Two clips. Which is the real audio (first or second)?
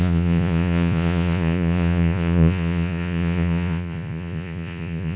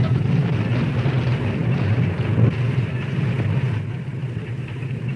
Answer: second